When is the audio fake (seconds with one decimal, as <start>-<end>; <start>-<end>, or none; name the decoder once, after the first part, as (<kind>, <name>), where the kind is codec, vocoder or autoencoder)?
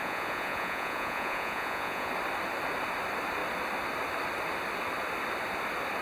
0.0-2.1 (vocoder, Vocos)